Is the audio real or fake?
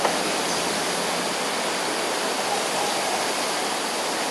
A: real